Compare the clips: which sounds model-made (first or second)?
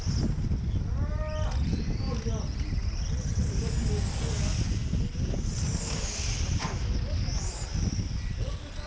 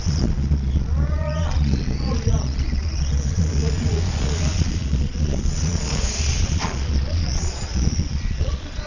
second